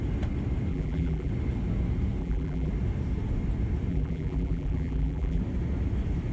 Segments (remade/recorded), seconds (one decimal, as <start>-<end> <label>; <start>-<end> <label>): 0.0-0.7 recorded; 0.7-1.3 remade; 1.3-2.2 recorded; 2.2-2.7 remade; 2.7-3.9 recorded; 3.9-5.4 remade; 5.4-6.3 recorded